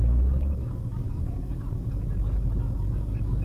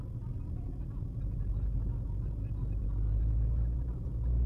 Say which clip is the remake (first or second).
first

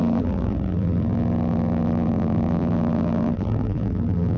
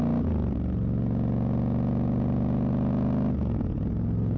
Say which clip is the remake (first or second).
first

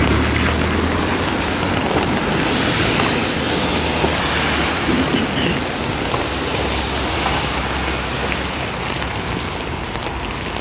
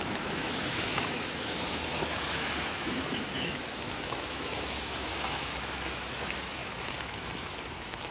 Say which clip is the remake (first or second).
second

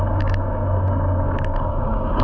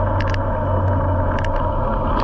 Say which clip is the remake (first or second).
first